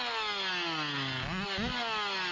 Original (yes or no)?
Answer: yes